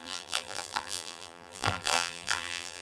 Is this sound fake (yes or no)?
yes